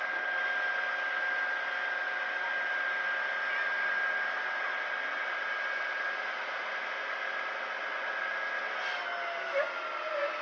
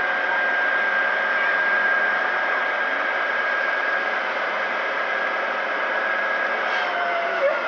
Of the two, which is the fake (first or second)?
second